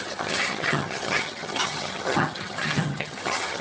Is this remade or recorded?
remade